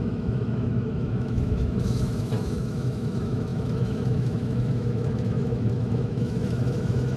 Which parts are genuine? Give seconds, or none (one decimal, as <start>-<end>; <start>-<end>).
none